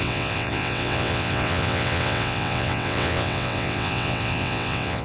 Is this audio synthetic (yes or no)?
yes